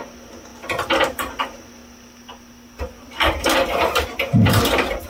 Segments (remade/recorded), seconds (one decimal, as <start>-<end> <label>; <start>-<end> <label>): 0.0-5.1 remade